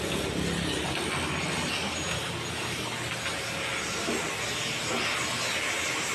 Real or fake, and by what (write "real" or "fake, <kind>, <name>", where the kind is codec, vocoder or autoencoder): real